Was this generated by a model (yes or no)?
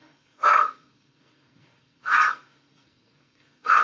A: yes